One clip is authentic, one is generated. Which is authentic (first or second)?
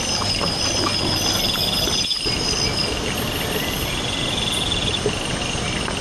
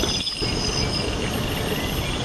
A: second